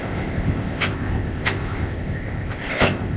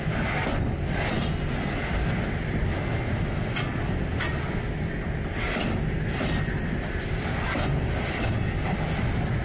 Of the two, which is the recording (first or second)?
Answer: second